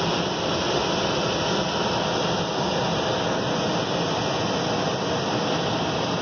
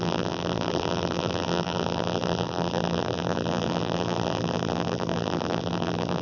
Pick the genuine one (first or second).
first